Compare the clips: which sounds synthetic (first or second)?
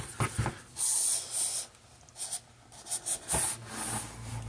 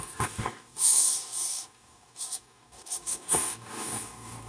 second